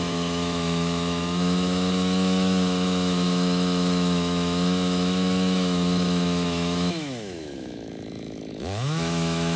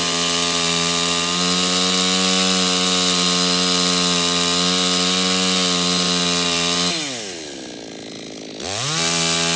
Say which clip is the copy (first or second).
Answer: first